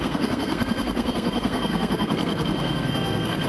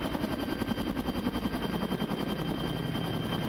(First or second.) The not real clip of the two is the first